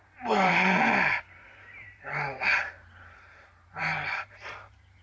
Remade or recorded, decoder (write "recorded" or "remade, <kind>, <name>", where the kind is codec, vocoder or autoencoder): remade, vocoder, BigVGAN v2